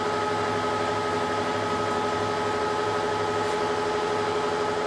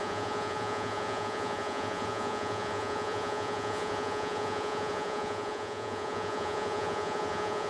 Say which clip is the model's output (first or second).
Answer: second